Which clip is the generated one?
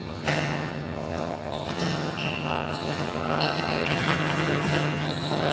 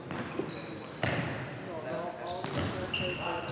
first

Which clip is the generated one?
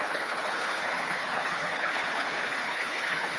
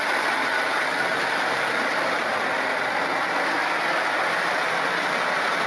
first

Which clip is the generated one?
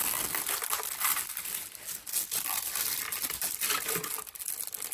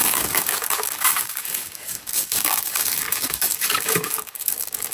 second